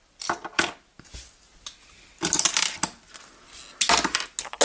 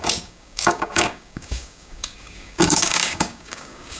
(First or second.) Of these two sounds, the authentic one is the first